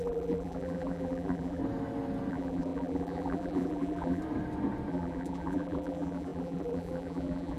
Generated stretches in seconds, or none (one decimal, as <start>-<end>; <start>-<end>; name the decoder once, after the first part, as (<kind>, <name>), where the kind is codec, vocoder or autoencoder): 0.0-1.6 (vocoder, BigVGAN v2); 2.3-4.2; 4.9-7.6